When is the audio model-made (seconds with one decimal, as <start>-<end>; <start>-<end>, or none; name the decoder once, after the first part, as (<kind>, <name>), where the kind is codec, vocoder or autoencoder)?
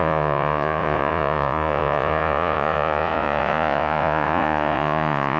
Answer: 0.0-5.4 (vocoder, Vocos)